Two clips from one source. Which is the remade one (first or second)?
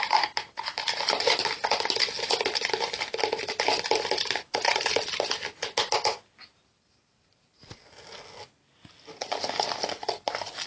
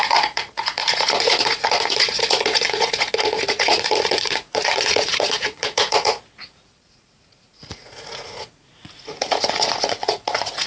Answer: second